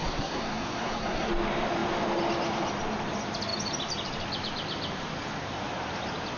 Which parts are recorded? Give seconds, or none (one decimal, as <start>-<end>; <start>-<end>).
1.3-6.4